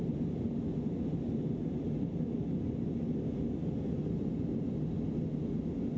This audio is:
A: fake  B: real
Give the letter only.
B